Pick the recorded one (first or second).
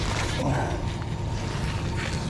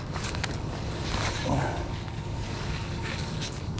first